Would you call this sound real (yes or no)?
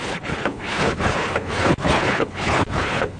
no